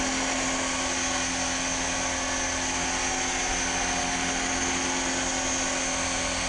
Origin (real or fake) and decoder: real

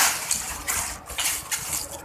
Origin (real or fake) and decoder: real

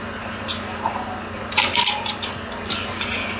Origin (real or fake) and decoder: fake, vocoder, BigVGAN v2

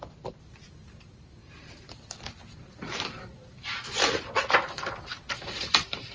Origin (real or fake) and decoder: fake, vocoder, BigVGAN v2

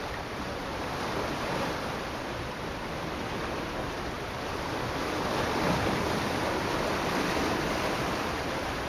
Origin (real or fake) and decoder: fake, vocoder, BigVGAN v2